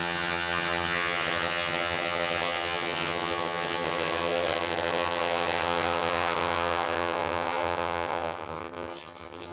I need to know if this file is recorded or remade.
remade